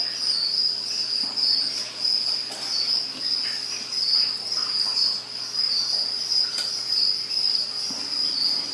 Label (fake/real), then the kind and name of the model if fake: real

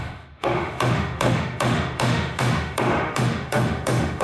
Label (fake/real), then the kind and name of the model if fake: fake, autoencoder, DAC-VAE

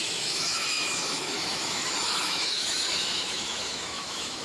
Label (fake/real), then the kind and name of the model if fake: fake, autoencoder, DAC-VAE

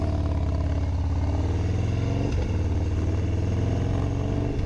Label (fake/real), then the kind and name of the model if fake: real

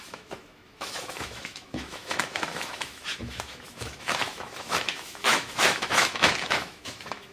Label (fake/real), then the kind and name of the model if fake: fake, autoencoder, DAC-VAE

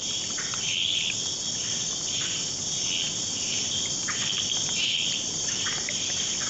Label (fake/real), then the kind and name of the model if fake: real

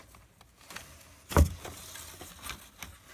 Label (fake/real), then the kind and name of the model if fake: real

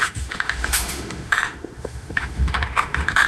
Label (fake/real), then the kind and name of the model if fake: fake, autoencoder, DAC-VAE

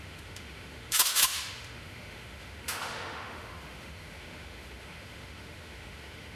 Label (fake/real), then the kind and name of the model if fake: fake, autoencoder, DAC-VAE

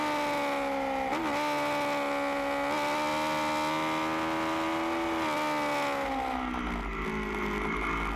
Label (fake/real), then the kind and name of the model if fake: real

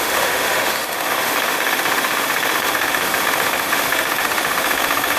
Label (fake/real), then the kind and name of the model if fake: fake, autoencoder, DAC-VAE